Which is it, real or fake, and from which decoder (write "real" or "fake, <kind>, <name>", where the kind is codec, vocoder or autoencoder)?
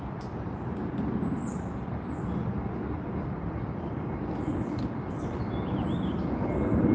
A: real